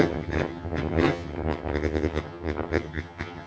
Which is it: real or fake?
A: fake